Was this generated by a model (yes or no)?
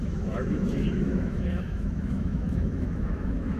yes